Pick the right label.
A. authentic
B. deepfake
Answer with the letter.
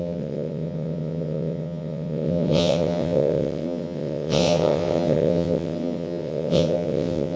B